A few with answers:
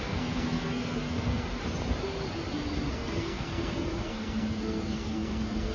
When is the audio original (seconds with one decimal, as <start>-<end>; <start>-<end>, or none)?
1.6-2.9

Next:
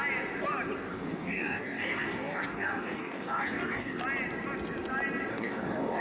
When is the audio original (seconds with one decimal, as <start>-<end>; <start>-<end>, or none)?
0.0-0.9; 4.0-5.3

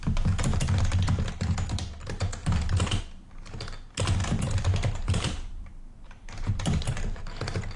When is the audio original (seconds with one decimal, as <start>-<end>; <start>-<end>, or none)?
0.0-4.2; 7.2-7.8

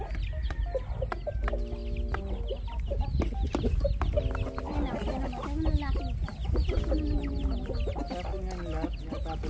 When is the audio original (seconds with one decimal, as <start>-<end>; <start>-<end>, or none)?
0.0-9.5

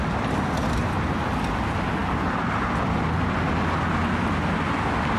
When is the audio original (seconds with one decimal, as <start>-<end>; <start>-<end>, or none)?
0.0-2.0; 2.7-5.2

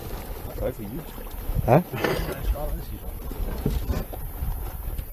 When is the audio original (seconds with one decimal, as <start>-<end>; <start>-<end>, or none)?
1.3-2.0; 4.2-5.1

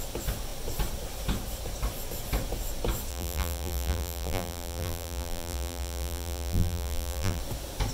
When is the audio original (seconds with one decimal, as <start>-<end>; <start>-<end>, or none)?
0.0-3.1; 7.4-7.9

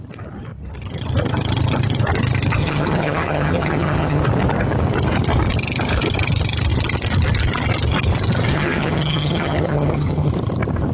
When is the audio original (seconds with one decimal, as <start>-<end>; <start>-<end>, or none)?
0.0-2.6; 4.2-8.5; 10.3-10.9